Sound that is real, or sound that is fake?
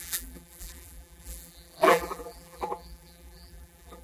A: fake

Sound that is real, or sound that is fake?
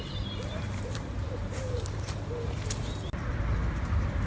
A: fake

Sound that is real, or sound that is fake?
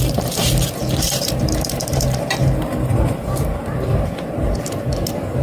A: fake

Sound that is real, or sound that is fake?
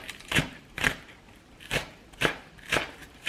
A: fake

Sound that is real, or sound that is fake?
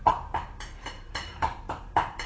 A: fake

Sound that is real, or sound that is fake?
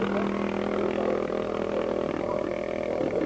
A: real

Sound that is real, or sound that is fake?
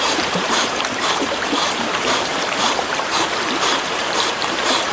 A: fake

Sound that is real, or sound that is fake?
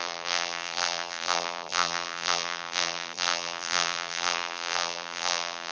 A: fake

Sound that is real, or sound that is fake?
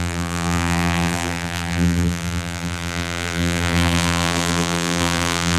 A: fake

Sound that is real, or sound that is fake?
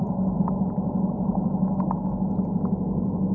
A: real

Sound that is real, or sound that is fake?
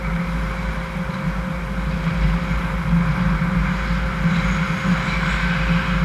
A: real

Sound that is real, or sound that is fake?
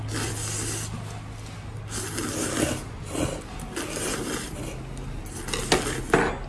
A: real